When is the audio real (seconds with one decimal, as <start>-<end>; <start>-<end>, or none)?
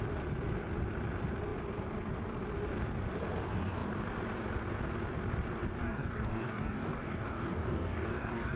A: 0.0-5.8